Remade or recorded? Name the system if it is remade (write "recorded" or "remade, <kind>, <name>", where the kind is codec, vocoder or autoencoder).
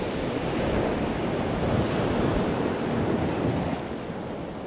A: recorded